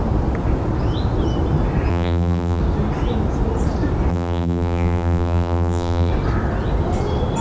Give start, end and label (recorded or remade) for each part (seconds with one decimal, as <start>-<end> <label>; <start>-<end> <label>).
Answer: 0.0-1.9 recorded; 1.9-2.6 remade; 2.6-4.1 recorded; 4.1-6.1 remade; 6.1-7.4 recorded